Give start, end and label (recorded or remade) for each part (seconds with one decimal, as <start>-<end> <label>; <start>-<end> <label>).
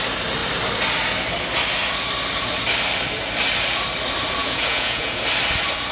0.0-4.4 recorded; 4.4-5.2 remade; 5.2-5.9 recorded